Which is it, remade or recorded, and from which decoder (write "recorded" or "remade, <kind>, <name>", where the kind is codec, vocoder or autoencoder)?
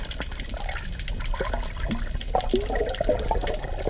recorded